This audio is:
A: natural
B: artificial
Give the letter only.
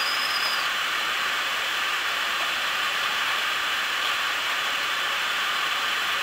B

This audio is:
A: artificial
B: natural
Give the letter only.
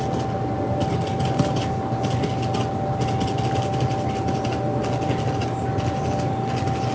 B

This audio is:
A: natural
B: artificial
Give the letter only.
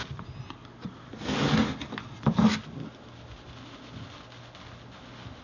A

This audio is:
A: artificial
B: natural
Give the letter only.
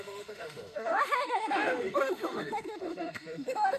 A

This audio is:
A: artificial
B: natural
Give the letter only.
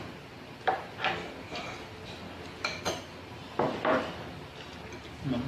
B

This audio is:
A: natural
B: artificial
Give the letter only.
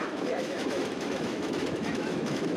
B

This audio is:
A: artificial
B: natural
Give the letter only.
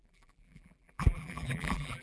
A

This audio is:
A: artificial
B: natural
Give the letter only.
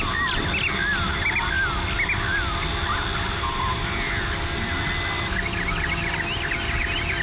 B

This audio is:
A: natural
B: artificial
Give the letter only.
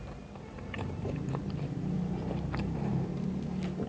B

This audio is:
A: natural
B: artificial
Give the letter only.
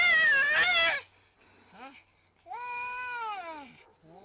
A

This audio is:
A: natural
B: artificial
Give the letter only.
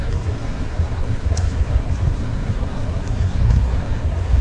B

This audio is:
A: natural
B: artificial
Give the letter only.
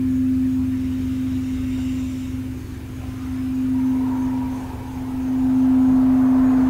A